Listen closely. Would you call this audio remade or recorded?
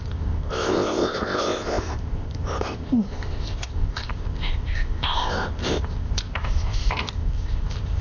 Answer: remade